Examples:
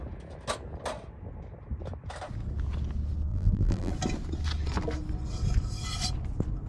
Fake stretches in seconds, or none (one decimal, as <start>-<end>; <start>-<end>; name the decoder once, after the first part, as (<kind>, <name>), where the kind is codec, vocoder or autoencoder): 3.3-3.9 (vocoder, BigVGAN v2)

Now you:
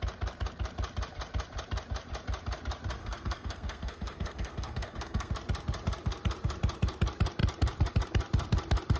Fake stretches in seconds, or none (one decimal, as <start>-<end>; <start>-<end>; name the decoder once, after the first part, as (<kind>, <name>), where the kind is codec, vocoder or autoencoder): 3.0-5.3 (codec, SNAC)

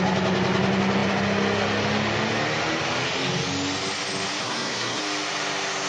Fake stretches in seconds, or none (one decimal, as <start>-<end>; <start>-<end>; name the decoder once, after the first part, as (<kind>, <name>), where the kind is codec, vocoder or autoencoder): 4.4-5.0 (codec, SNAC)

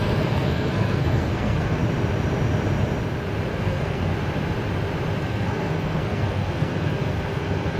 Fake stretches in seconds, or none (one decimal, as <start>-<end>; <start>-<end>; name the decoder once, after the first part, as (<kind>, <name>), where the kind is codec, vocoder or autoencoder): 0.0-1.8 (codec, SNAC); 3.5-4.1; 5.2-7.8

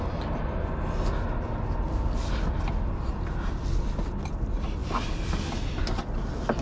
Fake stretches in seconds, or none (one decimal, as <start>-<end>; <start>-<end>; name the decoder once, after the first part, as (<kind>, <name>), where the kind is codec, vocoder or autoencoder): none